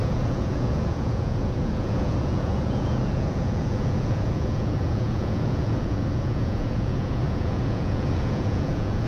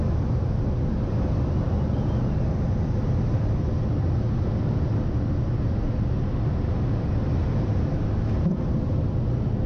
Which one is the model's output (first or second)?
first